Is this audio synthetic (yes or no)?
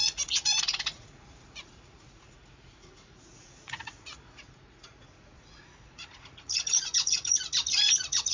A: yes